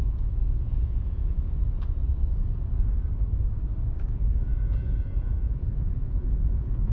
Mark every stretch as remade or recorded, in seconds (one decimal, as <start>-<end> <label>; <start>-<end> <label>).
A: 0.0-1.6 remade; 1.6-4.1 recorded; 4.1-6.9 remade